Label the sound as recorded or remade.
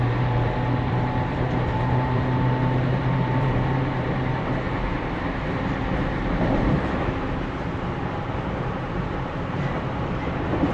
remade